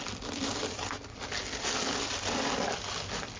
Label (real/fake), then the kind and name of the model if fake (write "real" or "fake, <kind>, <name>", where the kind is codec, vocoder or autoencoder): real